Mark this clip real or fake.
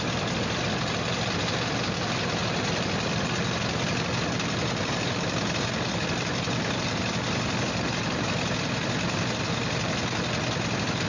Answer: real